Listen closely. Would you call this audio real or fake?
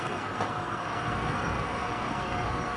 fake